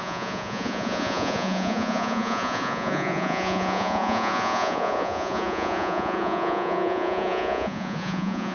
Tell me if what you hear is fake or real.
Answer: fake